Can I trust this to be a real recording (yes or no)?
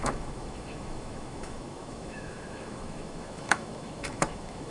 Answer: no